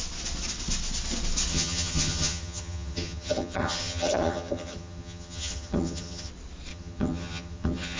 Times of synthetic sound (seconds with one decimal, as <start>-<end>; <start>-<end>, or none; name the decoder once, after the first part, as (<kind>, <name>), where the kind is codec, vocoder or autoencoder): 1.5-6.3 (vocoder, HiFi-GAN); 6.7-8.0